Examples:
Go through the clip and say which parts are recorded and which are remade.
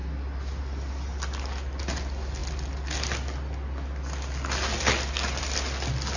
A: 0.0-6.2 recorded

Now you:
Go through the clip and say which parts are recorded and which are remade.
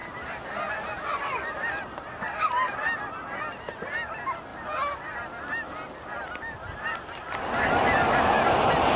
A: 0.0-9.0 recorded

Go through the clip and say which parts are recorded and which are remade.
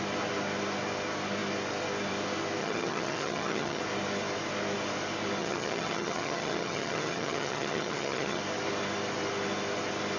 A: 0.0-2.6 recorded; 2.6-3.8 remade; 3.8-5.4 recorded; 5.4-8.4 remade; 8.4-10.2 recorded